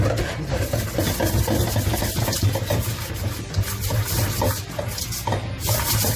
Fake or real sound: real